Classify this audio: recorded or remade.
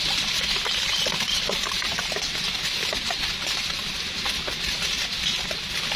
recorded